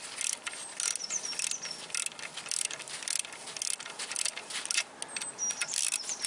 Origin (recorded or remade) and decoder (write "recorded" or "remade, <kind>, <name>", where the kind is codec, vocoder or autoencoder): recorded